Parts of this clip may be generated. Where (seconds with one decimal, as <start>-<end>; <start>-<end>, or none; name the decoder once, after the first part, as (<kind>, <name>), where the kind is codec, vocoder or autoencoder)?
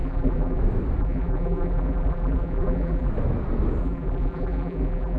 0.0-0.6 (vocoder, BigVGAN v2); 1.0-3.1; 3.8-5.2